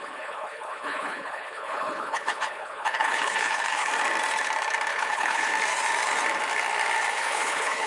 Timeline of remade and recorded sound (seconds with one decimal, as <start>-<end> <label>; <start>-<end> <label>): 0.0-3.9 remade; 3.9-4.9 recorded; 4.9-5.5 remade; 5.5-7.1 recorded; 7.1-7.9 remade